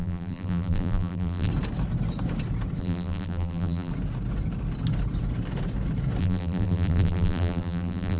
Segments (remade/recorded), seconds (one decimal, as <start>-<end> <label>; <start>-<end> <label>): 0.0-1.5 remade; 1.5-2.8 recorded; 2.8-3.9 remade; 3.9-6.2 recorded; 6.2-8.2 remade